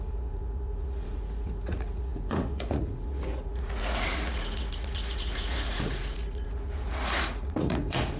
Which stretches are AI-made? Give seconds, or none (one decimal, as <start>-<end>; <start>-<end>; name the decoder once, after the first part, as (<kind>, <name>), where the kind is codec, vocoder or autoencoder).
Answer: 0.0-8.2 (vocoder, Vocos)